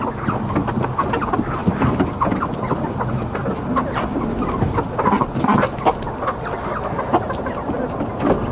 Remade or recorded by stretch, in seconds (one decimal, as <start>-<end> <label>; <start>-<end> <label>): 0.0-1.6 recorded; 1.6-3.3 remade; 3.3-8.5 recorded